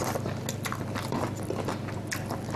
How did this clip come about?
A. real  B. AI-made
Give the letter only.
A